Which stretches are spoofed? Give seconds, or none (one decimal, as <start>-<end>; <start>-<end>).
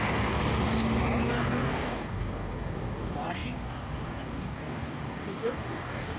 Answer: 0.0-0.4; 1.2-6.2